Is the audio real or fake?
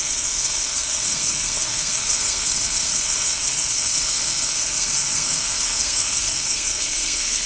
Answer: fake